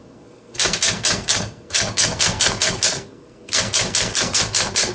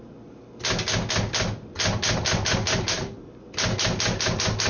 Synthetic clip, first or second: first